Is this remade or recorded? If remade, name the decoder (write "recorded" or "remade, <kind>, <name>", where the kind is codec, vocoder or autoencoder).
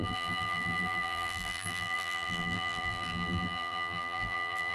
remade, vocoder, BigVGAN v2